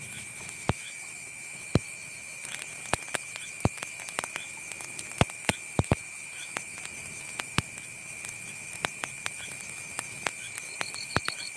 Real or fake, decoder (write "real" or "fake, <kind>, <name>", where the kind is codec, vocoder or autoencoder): fake, autoencoder, DAC-VAE